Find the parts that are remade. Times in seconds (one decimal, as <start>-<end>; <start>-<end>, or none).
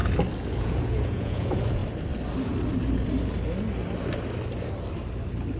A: 0.6-1.8